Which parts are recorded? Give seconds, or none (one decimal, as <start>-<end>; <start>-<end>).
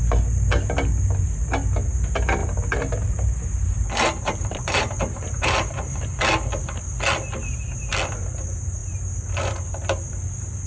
0.0-2.4; 6.2-10.7